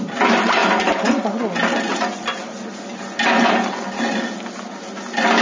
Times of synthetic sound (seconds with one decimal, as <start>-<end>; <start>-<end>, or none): none